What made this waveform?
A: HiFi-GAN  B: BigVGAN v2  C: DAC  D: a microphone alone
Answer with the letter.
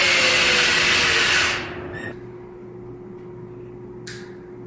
D